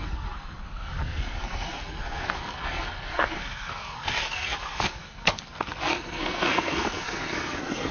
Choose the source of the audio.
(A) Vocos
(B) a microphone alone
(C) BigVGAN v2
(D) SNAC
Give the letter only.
D